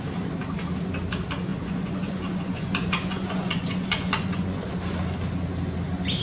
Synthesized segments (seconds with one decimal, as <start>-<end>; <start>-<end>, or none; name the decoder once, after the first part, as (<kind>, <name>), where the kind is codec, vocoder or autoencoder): 1.5-4.6 (vocoder, Vocos)